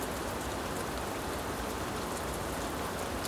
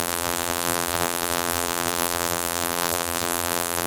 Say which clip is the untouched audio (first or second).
first